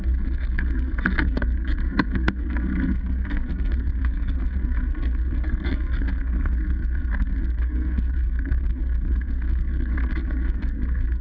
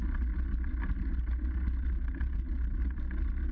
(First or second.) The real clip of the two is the second